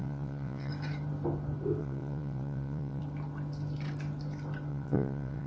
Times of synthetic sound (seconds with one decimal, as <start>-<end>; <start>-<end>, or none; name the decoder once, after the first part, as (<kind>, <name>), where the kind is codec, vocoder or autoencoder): 0.0-0.7 (vocoder, WaveNeXt); 1.8-3.0; 4.7-5.5